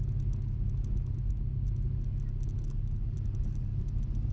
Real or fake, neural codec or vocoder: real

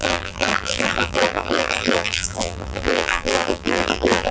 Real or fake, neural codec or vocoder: fake, vocoder, BigVGAN v2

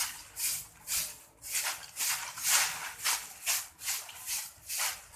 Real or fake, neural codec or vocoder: real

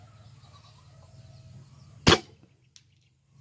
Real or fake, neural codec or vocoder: real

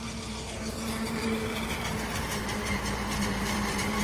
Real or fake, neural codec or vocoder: fake, vocoder, BigVGAN v2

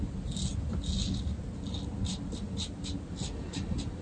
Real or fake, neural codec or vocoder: real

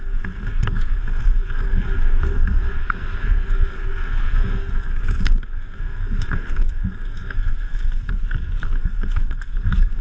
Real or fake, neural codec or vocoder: fake, codec, SNAC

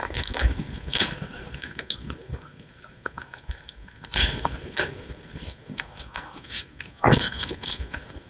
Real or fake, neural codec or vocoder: fake, codec, SNAC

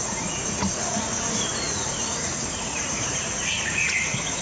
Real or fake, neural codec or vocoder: fake, vocoder, Vocos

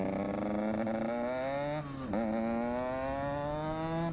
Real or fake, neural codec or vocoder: real